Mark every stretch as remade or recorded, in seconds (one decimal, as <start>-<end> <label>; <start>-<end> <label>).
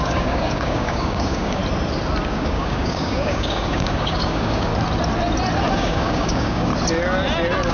0.0-1.6 remade; 1.6-2.3 recorded; 2.3-4.7 remade; 4.7-5.7 recorded; 5.7-6.7 remade; 6.7-7.7 recorded